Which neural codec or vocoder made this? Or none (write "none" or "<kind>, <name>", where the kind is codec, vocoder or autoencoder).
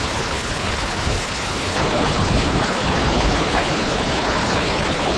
codec, HILCodec